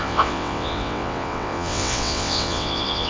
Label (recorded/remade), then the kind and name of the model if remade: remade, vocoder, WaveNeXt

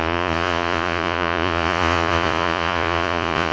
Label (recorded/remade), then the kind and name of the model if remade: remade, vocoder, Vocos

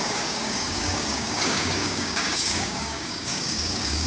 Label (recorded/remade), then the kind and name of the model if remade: remade, codec, DAC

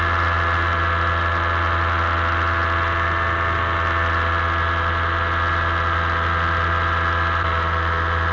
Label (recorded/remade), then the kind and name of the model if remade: recorded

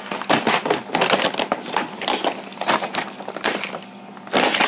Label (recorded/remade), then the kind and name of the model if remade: recorded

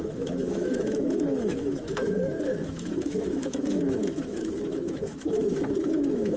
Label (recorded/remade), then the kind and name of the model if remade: remade, autoencoder, DAC-VAE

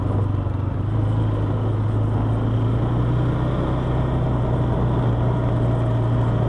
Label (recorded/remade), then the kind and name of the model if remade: recorded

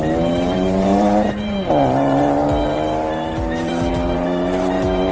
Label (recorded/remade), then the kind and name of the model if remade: remade, vocoder, BigVGAN v2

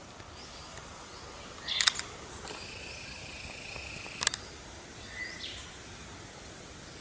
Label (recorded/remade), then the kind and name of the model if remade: recorded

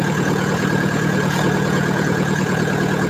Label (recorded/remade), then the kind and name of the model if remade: remade, vocoder, Vocos